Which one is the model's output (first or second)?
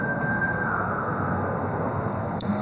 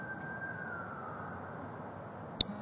first